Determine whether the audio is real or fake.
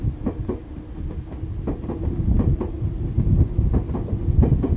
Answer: real